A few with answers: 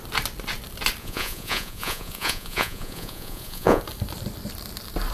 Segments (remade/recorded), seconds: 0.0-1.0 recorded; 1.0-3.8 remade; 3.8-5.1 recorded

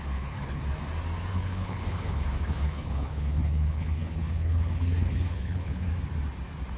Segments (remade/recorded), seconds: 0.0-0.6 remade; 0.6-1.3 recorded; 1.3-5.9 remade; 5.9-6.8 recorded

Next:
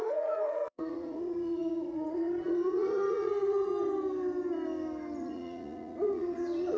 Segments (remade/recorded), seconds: 0.0-3.7 remade; 3.7-5.2 recorded; 5.2-6.8 remade

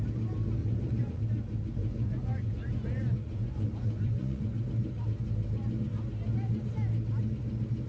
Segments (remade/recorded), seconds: 0.0-0.6 recorded; 0.6-1.2 remade; 1.2-1.8 recorded; 1.8-4.7 remade; 4.7-7.9 recorded